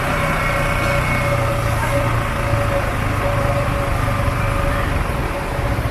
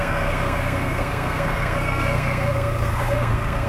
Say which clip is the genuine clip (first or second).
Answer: first